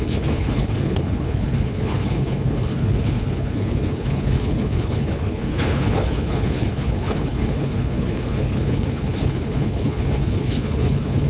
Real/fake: fake